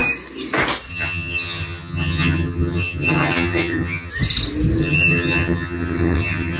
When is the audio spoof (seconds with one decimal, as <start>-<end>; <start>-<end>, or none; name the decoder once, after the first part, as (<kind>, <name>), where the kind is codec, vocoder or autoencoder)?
0.9-4.1 (vocoder, HiFi-GAN); 4.8-6.6